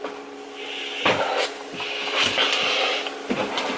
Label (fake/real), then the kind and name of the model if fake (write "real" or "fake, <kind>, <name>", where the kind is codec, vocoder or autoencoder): real